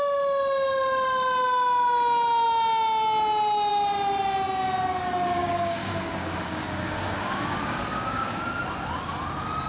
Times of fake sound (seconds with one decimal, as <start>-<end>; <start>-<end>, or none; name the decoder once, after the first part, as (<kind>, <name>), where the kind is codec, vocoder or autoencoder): 5.4-8.4 (codec, DAC)